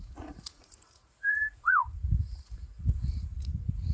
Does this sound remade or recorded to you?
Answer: remade